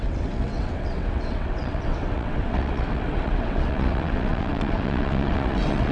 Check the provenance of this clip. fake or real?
fake